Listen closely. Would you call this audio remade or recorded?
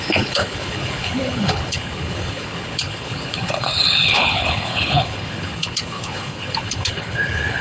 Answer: remade